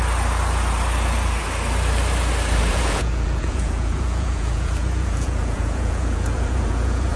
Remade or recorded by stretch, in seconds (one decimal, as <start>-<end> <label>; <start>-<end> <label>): 0.0-2.7 recorded; 2.7-7.2 remade